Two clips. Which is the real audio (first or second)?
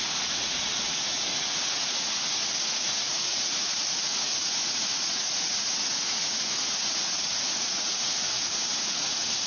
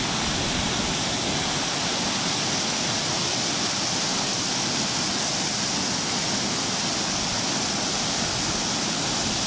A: second